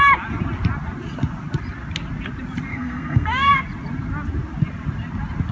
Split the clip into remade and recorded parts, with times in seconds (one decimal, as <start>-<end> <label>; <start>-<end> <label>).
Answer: 0.0-2.7 recorded; 2.7-3.6 remade; 3.6-5.5 recorded